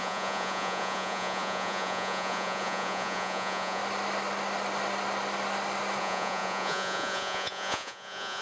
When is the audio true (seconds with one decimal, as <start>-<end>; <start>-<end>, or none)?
3.8-6.0